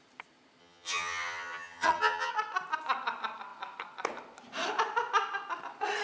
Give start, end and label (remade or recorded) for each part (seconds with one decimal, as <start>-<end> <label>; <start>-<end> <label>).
0.0-0.6 recorded; 0.6-2.3 remade; 2.3-6.0 recorded